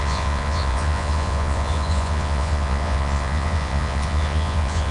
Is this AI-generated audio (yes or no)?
yes